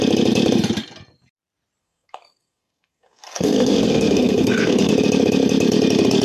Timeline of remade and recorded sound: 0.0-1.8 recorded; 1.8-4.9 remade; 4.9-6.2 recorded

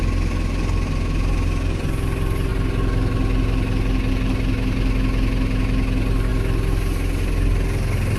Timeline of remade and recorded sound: 0.0-8.2 recorded

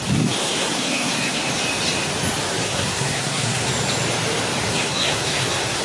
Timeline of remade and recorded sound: 0.0-0.4 recorded; 0.4-1.5 remade; 1.5-2.6 recorded; 2.6-3.7 remade; 3.7-4.7 recorded; 4.7-5.8 remade

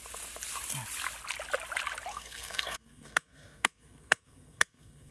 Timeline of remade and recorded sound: 0.0-2.1 recorded; 2.1-5.1 remade

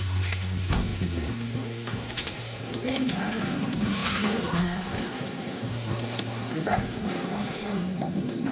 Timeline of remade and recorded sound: 0.0-8.5 remade

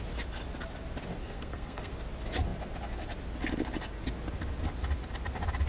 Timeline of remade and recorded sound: 0.0-1.2 recorded; 1.2-1.9 remade; 1.9-5.7 recorded

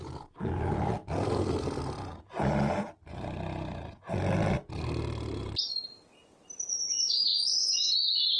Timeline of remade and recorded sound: 0.0-8.4 recorded